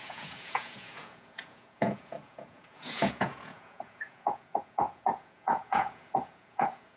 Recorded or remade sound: remade